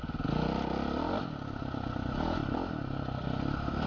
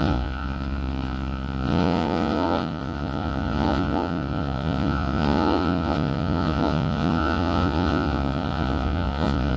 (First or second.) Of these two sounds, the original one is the first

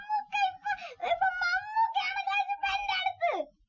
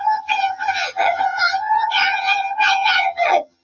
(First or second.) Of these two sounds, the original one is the first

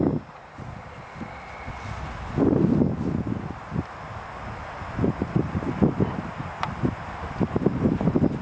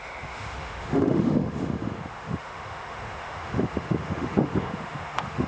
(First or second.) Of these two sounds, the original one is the first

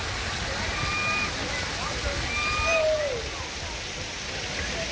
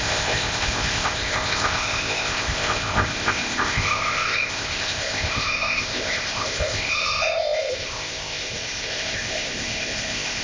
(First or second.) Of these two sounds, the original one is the first